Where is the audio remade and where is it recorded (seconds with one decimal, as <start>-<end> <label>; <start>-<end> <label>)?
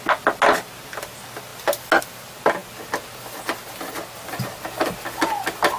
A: 0.0-5.8 recorded